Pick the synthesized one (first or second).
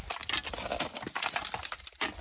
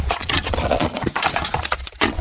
second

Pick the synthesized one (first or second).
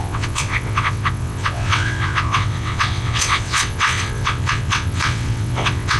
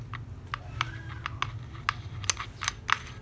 first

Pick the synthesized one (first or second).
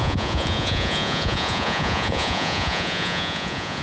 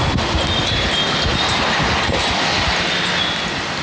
first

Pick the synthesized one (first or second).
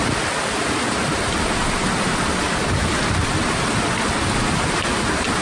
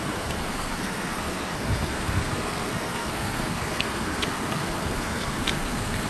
second